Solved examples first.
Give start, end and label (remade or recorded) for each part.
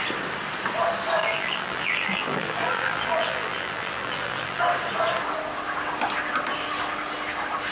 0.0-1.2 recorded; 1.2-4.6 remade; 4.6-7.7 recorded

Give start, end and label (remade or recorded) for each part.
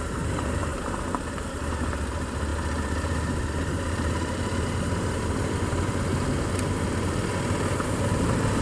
0.0-6.1 remade; 6.1-7.8 recorded; 7.8-8.6 remade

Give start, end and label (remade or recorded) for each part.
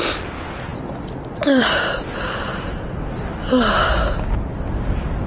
0.0-2.5 remade; 2.5-4.3 recorded; 4.3-5.3 remade